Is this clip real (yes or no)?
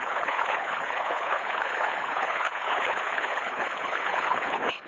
no